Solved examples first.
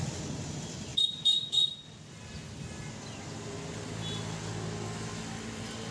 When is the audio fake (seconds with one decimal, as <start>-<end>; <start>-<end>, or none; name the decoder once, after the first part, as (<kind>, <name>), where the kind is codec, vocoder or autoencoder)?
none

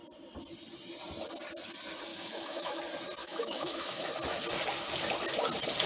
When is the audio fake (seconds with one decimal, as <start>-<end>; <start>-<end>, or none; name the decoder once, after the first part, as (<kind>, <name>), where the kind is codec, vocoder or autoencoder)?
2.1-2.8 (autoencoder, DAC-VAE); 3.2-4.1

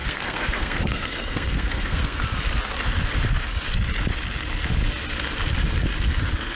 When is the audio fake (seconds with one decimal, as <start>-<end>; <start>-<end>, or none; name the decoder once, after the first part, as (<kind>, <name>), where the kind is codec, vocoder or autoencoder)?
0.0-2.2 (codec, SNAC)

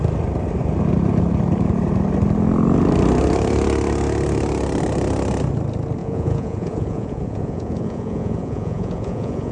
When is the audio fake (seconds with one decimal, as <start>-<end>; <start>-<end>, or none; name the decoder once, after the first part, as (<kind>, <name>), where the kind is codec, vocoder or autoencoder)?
6.0-9.5 (vocoder, Vocos)

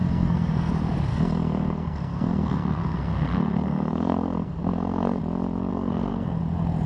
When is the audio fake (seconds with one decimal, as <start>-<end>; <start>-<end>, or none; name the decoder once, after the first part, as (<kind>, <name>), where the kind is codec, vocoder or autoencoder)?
0.0-0.7 (codec, SNAC); 1.1-5.2; 5.7-6.4

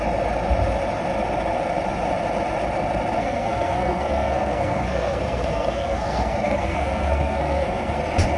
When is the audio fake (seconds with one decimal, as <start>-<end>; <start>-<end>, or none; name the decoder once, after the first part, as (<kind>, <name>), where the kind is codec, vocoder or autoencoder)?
3.2-8.0 (codec, SNAC)

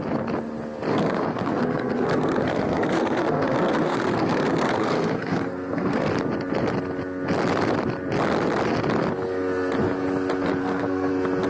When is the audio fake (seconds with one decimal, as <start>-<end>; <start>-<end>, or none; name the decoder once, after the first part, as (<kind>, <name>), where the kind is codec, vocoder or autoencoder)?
0.9-6.1 (codec, SNAC); 10.6-11.1